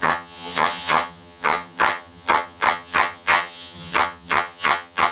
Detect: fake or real fake